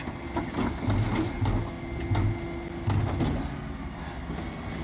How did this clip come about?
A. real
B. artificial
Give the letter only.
A